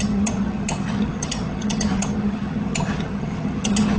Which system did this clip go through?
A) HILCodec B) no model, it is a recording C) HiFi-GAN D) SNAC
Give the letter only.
C